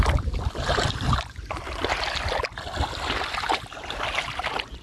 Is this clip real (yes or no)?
yes